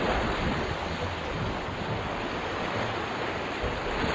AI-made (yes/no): no